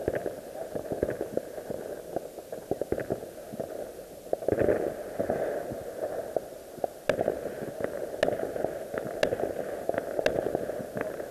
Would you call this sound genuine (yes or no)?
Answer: yes